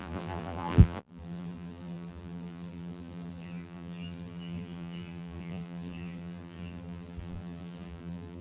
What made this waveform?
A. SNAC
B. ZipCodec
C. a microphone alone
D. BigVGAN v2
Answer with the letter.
D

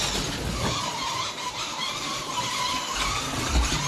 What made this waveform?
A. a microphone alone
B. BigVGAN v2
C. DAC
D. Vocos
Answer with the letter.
B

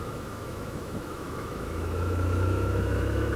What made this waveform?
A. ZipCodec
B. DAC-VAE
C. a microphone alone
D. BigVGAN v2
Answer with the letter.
B